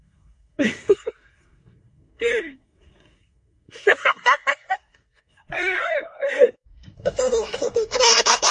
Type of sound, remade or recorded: remade